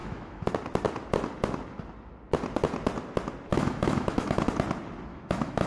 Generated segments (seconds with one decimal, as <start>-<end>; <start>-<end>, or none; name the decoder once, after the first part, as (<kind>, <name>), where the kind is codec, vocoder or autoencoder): 0.0-0.5 (autoencoder, DAC-VAE); 3.5-4.5; 5.1-5.7